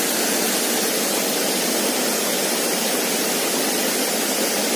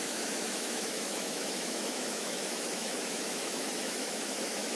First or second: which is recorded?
first